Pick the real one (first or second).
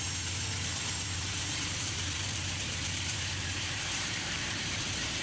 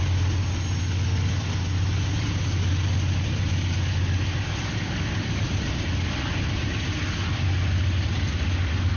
second